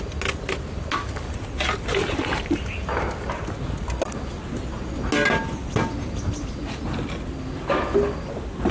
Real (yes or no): yes